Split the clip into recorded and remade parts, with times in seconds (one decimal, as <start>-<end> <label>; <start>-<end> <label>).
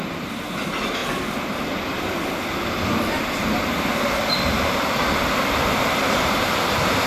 0.0-7.1 remade